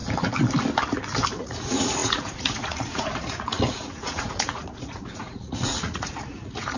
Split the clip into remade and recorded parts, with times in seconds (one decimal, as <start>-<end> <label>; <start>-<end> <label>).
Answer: 0.0-1.4 recorded; 1.4-6.8 remade